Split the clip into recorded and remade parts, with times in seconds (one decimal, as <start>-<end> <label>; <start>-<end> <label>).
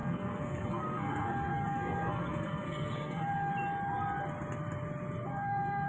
0.0-3.5 remade; 3.5-5.3 recorded; 5.3-5.9 remade